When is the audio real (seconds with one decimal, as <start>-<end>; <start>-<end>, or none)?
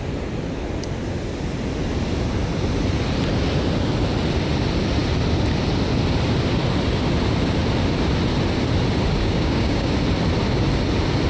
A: 0.0-9.2; 9.9-11.3